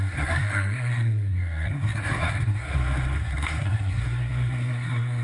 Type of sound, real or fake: fake